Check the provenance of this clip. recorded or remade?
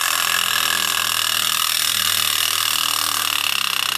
recorded